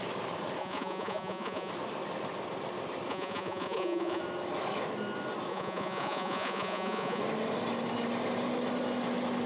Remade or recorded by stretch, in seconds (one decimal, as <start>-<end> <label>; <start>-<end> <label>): 0.0-0.6 recorded; 0.6-1.7 remade; 1.7-3.1 recorded; 3.1-4.2 remade; 4.2-5.5 recorded; 5.5-7.2 remade; 7.2-9.5 recorded